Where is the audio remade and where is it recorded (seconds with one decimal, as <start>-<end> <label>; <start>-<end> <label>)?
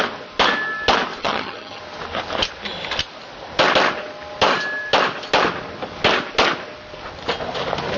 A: 0.0-1.2 recorded; 1.2-1.8 remade; 1.8-8.0 recorded